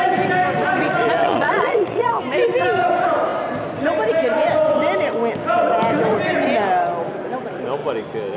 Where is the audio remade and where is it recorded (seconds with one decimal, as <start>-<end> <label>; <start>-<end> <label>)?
0.0-1.2 recorded; 1.2-2.1 remade; 2.1-8.4 recorded